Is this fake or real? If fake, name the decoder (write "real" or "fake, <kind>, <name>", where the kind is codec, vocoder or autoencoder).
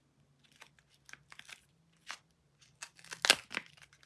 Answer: real